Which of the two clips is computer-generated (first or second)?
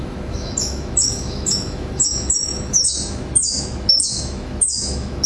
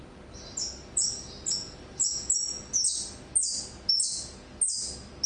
first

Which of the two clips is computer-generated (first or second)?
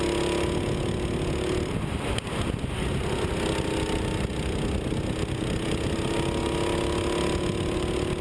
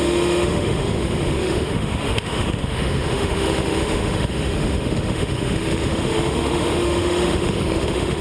second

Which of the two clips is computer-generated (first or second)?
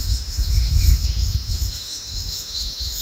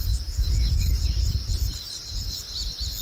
first